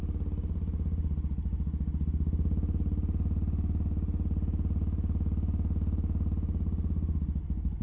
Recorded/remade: recorded